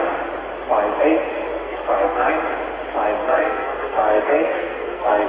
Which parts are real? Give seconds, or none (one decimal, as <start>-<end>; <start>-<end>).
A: 0.0-1.3; 2.3-3.2